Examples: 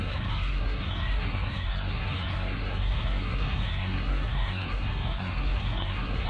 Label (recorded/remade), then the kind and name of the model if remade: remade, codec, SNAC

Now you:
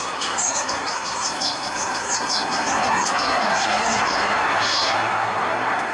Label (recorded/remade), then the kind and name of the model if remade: remade, codec, SNAC